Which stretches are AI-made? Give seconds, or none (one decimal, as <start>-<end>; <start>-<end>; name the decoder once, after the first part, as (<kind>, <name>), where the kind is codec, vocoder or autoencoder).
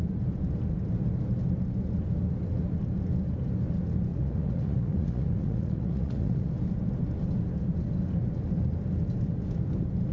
4.1-6.5 (vocoder, Vocos)